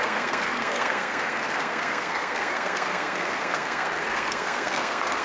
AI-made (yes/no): yes